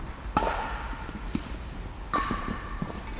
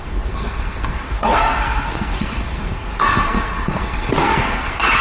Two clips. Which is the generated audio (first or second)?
second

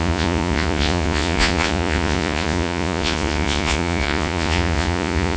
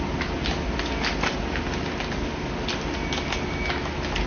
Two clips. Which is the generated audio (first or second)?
first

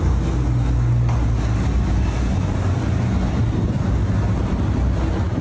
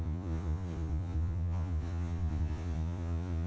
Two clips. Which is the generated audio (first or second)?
second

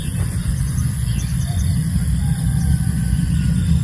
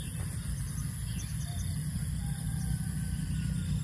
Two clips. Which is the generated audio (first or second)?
first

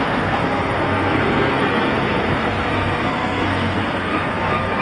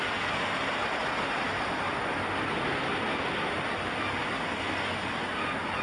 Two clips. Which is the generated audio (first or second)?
first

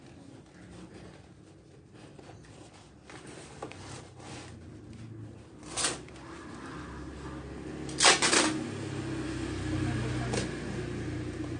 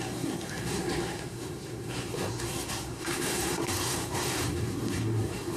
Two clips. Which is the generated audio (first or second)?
second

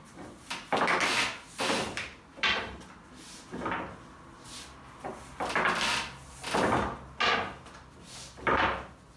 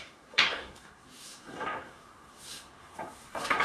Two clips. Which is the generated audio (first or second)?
second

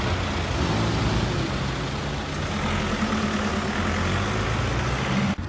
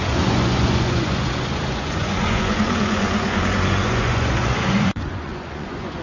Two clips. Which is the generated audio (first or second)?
second